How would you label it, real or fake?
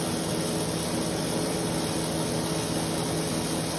real